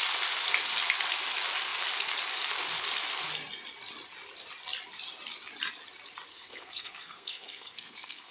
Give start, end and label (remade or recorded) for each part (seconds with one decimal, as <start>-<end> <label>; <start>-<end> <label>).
0.0-6.3 recorded; 6.3-8.3 remade